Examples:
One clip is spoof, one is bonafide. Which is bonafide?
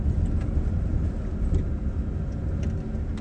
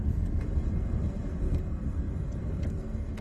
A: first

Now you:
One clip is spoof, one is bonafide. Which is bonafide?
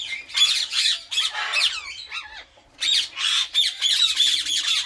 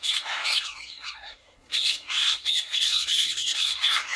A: first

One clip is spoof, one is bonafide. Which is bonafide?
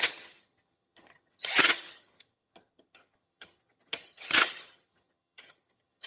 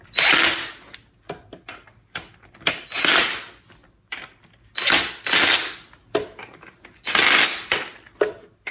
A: second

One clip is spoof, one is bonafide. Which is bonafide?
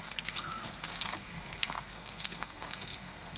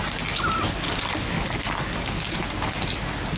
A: second